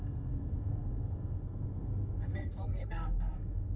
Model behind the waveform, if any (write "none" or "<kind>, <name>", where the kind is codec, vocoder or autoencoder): codec, SNAC